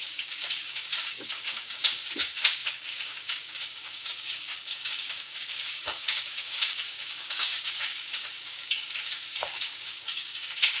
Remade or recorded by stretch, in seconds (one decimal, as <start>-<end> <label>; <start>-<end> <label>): 0.0-10.8 remade

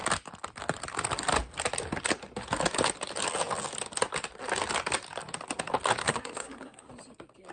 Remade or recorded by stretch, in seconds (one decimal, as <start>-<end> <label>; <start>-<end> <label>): 0.0-6.0 recorded; 6.0-6.9 remade; 6.9-7.5 recorded

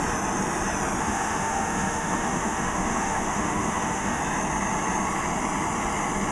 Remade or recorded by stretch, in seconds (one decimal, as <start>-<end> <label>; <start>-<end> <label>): 0.0-1.0 recorded; 1.0-4.2 remade; 4.2-6.3 recorded

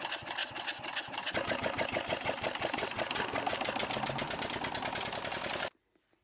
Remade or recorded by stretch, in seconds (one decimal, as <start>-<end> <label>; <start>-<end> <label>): 0.0-6.2 recorded

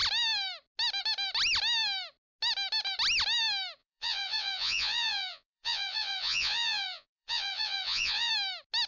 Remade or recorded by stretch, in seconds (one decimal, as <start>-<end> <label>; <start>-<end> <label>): 0.0-3.8 recorded; 3.8-8.3 remade; 8.3-8.9 recorded

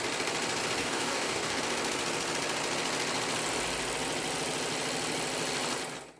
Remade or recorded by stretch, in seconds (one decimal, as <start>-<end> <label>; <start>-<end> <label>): 0.0-0.8 recorded; 0.8-1.6 remade; 1.6-6.2 recorded

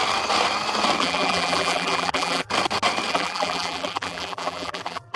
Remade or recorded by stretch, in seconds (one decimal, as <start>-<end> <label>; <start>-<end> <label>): 0.0-1.0 recorded; 1.0-2.5 remade; 2.5-3.1 recorded; 3.1-5.2 remade